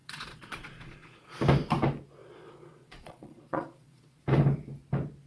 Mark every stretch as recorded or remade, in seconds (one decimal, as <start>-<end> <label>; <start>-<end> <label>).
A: 0.0-1.4 remade; 1.4-2.2 recorded; 2.2-4.2 remade; 4.2-5.3 recorded